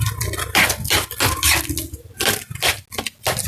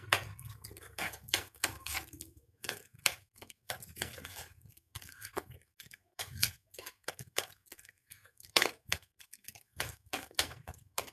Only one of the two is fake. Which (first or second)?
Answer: second